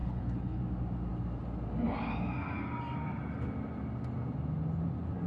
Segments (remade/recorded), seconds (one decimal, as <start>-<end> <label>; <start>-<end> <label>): 0.0-0.6 remade; 0.6-5.3 recorded